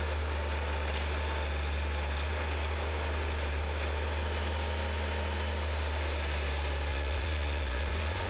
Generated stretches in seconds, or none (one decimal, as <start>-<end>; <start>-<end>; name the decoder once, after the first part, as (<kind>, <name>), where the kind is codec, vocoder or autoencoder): 6.9-8.3 (vocoder, Vocos)